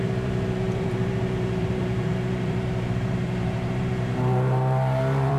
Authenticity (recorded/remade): remade